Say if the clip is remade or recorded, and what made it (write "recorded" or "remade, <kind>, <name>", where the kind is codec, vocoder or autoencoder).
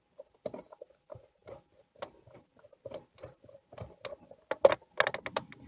recorded